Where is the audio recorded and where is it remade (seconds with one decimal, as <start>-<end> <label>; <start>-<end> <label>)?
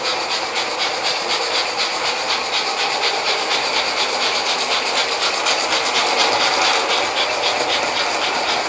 0.0-1.9 recorded; 1.9-5.9 remade; 5.9-8.7 recorded